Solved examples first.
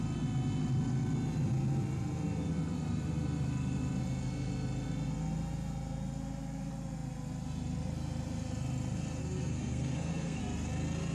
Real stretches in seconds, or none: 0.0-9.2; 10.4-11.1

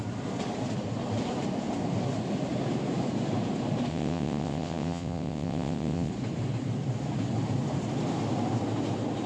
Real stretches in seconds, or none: 0.0-3.9; 6.1-9.3

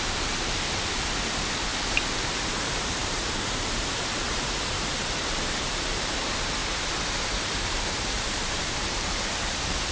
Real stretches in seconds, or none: 1.7-2.2; 6.6-7.4

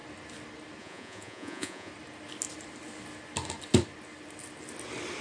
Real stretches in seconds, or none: 0.0-0.8; 1.9-5.2

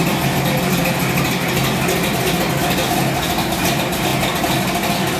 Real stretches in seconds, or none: 0.0-5.2

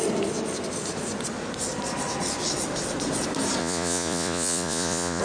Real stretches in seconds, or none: 0.0-3.6